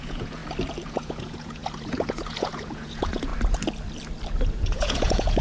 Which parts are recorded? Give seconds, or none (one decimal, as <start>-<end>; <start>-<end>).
0.4-0.9; 3.3-4.5

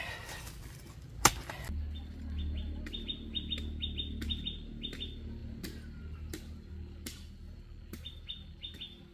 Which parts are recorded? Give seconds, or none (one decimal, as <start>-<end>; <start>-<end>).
0.0-9.1

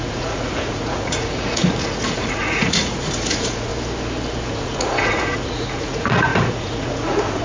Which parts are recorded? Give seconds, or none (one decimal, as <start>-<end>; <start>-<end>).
3.7-4.5

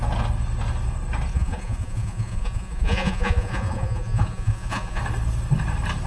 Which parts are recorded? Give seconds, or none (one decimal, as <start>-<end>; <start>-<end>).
0.0-1.3; 5.0-6.1

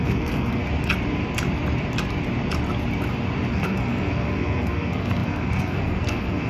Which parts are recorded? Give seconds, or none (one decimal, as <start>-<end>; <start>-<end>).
0.6-3.5

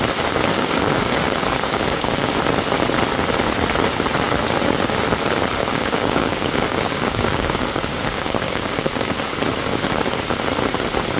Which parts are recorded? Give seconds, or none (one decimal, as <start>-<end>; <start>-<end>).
0.0-0.5; 2.3-5.6; 9.1-11.2

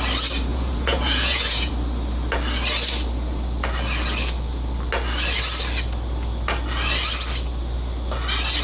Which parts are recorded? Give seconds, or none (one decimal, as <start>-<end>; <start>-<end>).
0.0-0.5; 1.7-8.6